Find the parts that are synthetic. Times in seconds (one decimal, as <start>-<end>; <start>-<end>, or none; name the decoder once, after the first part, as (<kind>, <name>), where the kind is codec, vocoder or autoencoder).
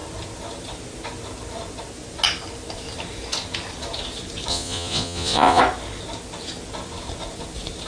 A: 4.5-5.6 (vocoder, Vocos)